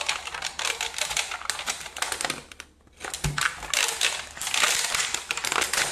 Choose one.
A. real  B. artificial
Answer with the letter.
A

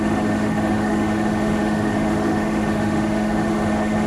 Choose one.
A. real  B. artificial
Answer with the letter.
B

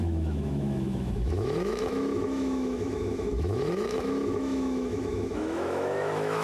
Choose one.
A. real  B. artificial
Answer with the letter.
B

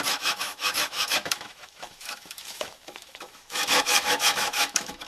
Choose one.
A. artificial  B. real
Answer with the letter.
A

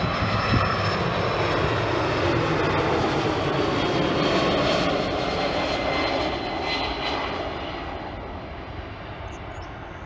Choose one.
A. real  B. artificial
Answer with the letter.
A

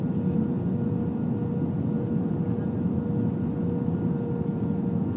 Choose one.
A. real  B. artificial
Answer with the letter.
A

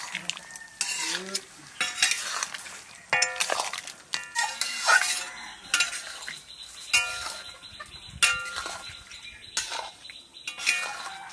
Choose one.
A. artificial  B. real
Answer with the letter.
B